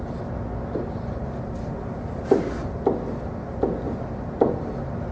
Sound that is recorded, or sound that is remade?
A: recorded